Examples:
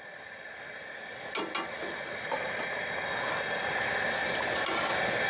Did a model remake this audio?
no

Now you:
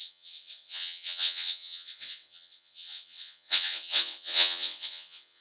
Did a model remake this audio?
yes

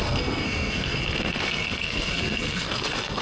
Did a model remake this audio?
yes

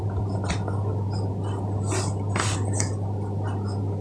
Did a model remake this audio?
no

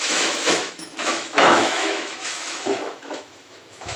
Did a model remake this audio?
yes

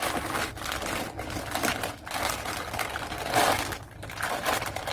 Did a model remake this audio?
no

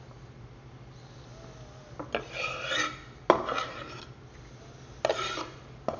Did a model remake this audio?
no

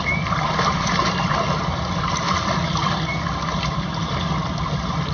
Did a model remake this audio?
yes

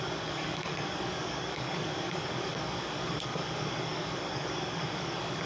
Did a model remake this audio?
yes